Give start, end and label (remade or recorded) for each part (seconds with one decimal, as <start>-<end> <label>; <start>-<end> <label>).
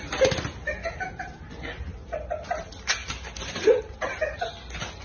0.0-5.0 recorded